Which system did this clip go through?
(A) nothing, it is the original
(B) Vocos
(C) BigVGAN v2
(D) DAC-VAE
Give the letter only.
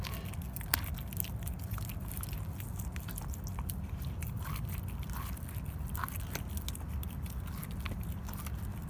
A